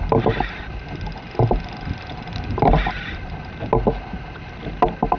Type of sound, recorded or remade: recorded